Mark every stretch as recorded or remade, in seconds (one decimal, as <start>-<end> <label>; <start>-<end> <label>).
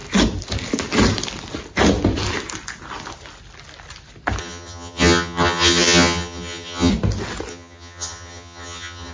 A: 0.0-4.4 recorded; 4.4-6.9 remade; 6.9-7.5 recorded; 7.5-9.1 remade